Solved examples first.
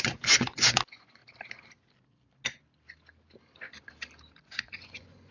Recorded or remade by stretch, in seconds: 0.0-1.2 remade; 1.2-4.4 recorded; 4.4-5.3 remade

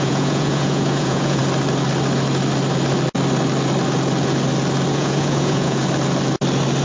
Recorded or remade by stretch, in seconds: 0.0-1.4 remade; 1.4-4.9 recorded; 4.9-5.8 remade; 5.8-6.8 recorded